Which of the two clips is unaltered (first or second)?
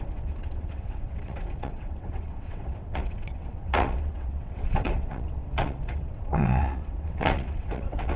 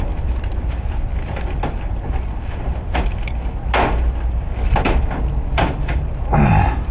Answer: second